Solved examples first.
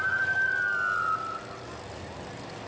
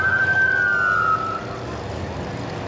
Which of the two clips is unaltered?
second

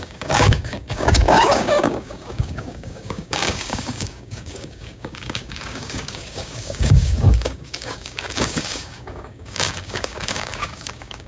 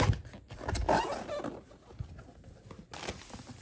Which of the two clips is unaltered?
second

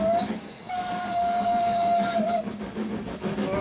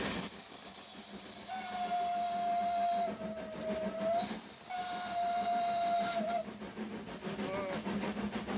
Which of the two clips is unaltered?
second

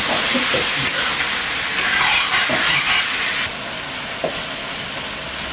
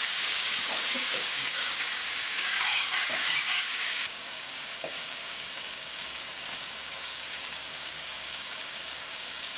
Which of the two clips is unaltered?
first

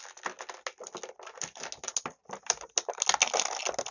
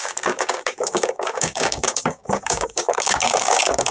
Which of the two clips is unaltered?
first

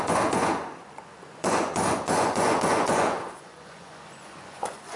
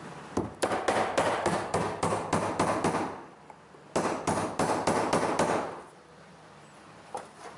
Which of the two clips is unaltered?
second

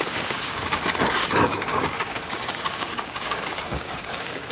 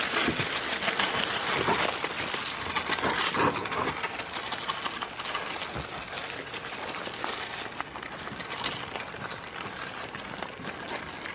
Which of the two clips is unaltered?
second